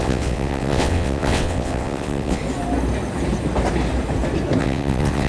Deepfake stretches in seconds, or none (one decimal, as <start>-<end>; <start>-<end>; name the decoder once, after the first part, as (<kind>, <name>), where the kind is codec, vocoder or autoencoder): 0.0-2.4 (vocoder, WaveNeXt); 4.6-5.3